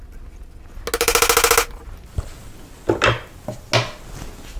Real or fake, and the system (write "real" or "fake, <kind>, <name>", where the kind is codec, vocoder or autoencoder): real